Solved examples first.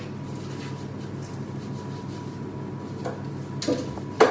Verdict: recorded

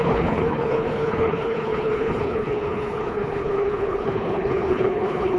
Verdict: remade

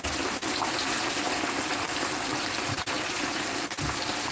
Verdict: recorded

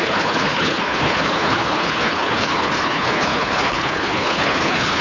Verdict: remade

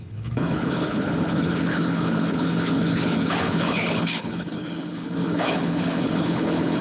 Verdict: remade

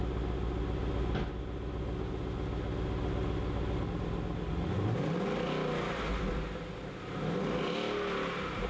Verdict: recorded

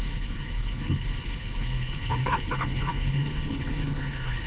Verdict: remade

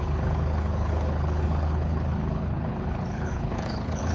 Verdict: remade